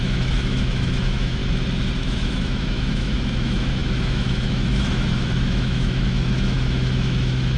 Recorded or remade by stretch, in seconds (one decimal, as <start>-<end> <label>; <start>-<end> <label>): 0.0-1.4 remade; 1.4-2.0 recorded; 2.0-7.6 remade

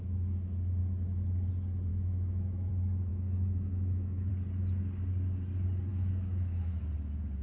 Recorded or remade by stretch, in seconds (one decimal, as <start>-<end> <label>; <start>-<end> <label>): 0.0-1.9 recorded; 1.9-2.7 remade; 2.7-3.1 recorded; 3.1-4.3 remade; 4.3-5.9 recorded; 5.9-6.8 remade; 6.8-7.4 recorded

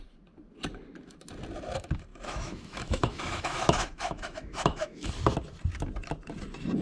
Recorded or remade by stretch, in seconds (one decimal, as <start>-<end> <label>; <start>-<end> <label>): 0.0-2.1 recorded; 2.1-5.1 remade; 5.1-6.8 recorded

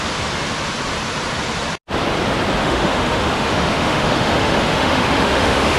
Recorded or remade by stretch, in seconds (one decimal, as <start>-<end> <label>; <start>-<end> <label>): 0.0-2.6 recorded; 2.6-5.8 remade

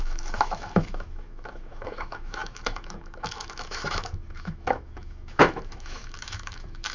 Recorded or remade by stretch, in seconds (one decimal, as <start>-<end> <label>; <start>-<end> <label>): 0.0-6.9 remade

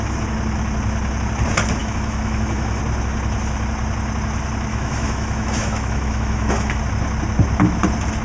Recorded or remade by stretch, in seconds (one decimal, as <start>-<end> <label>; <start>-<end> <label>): 0.0-1.8 recorded; 1.8-2.8 remade; 2.8-4.7 recorded; 4.7-6.8 remade; 6.8-8.2 recorded